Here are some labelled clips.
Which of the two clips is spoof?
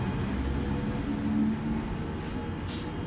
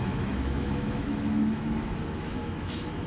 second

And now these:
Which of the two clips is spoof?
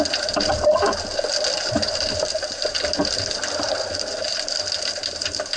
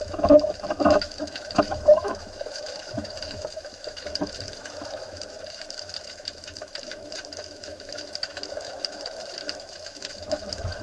second